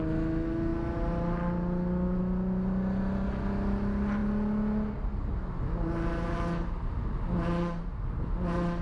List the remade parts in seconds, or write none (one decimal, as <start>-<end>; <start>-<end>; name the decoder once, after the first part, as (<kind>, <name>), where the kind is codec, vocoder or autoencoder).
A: none